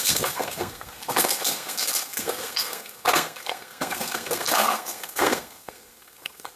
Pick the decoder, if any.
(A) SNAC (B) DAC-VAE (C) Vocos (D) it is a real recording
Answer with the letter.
A